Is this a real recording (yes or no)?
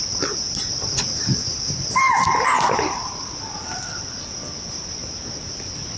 yes